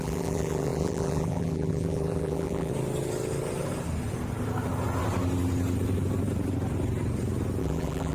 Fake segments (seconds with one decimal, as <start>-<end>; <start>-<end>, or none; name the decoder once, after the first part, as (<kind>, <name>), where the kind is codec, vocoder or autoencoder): 0.0-2.7 (vocoder, BigVGAN v2); 7.6-8.1